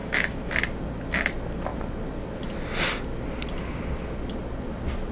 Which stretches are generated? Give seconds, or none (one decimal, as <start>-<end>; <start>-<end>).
0.0-0.5